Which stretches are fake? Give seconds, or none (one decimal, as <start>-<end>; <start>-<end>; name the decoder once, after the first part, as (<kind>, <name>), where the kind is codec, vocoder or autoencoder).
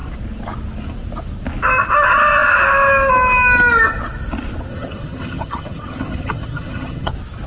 4.7-7.1 (vocoder, HiFi-GAN)